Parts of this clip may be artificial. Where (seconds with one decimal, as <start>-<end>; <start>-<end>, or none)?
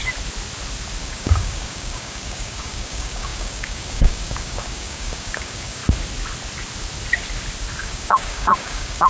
1.0-5.8; 7.8-9.1